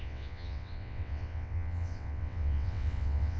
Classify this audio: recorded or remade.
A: remade